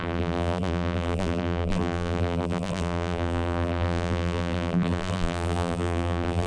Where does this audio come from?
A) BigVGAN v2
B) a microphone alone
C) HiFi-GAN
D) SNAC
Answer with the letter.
A